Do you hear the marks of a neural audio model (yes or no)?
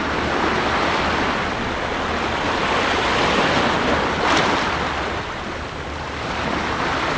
no